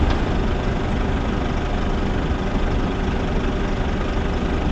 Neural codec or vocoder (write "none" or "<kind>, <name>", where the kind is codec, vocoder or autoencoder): none